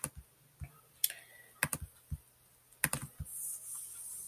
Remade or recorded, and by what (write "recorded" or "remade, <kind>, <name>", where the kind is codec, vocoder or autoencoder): recorded